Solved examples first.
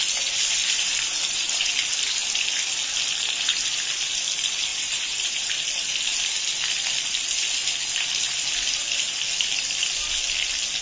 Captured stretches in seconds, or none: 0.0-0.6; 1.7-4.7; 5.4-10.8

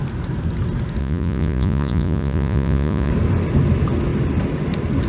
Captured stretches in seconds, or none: 0.0-1.0; 3.1-5.1

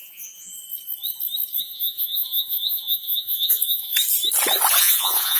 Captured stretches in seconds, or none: 0.5-1.6; 3.9-4.8

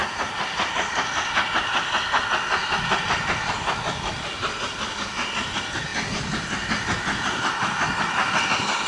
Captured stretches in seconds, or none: 0.0-8.9

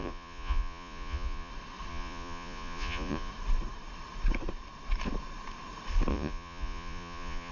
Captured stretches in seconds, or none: 1.5-1.9; 3.3-6.1

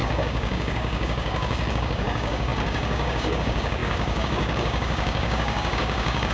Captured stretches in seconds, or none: none

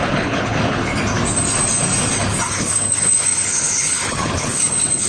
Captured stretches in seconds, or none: 0.9-2.5